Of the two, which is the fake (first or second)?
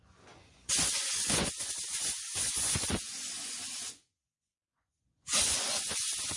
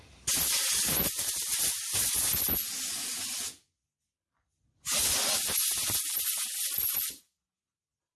first